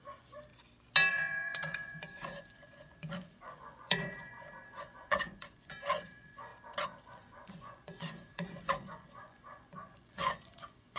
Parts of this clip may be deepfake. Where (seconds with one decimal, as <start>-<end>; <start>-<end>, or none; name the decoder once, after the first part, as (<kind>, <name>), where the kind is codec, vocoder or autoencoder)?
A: 0.0-0.5 (vocoder, Vocos); 1.1-6.5; 7.0-11.0